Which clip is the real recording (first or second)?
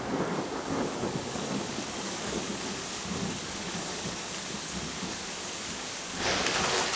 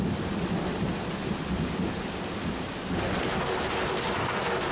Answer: second